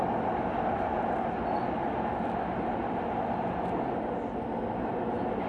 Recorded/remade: recorded